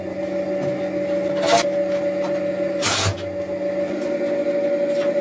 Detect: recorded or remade recorded